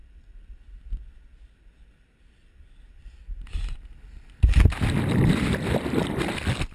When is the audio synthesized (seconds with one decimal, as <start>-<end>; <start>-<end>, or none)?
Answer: 2.4-5.3